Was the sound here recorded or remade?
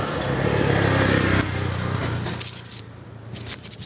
recorded